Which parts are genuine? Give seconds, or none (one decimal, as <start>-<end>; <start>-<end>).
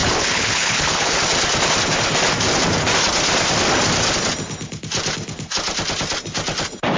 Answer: 1.2-7.0